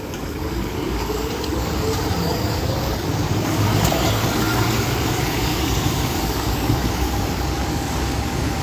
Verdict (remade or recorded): remade